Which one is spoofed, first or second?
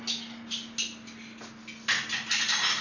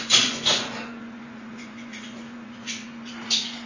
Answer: second